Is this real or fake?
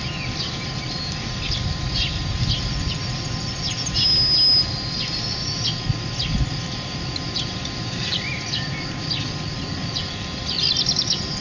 real